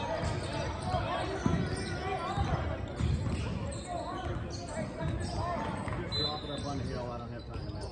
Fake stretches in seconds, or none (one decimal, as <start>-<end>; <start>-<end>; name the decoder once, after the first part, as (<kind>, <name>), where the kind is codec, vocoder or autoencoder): none